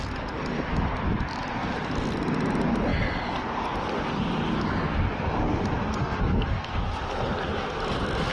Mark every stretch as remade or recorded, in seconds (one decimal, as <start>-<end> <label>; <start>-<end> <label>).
0.0-6.0 recorded; 6.0-6.8 remade; 6.8-8.3 recorded